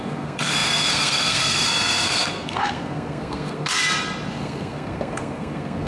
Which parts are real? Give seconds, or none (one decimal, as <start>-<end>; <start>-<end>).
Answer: 3.8-4.4